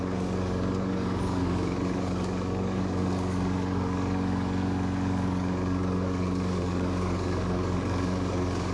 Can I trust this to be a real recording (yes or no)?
no